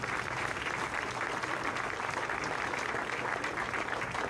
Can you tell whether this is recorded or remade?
recorded